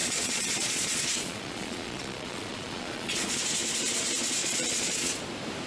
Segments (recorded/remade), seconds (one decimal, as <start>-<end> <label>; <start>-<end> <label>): 0.0-3.4 remade; 3.4-4.4 recorded; 4.4-5.2 remade; 5.2-5.7 recorded